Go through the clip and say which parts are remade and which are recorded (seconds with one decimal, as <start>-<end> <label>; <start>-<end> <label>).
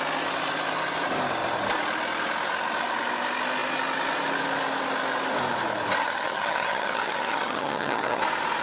0.0-6.0 recorded; 6.0-8.2 remade; 8.2-8.6 recorded